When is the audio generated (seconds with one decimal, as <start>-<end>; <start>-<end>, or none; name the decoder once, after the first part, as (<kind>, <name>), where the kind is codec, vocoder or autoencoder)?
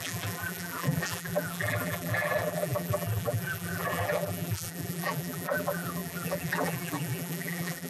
0.0-7.9 (vocoder, BigVGAN v2)